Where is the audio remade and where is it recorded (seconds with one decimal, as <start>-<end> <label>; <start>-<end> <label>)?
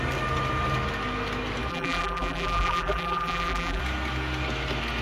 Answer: 0.0-1.7 recorded; 1.7-3.8 remade; 3.8-5.0 recorded